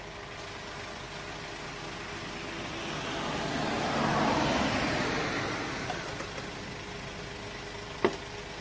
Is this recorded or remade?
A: recorded